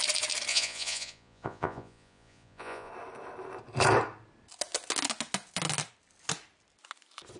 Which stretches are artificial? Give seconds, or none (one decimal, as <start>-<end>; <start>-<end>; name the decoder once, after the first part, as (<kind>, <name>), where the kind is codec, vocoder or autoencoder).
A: 0.5-2.9 (vocoder, Vocos)

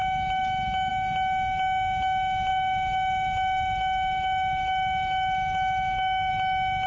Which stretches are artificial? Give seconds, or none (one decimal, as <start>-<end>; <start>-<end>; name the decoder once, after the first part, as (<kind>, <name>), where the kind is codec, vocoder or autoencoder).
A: 2.5-6.3 (autoencoder, DAC-VAE)